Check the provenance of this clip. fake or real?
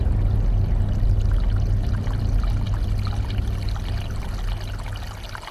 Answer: real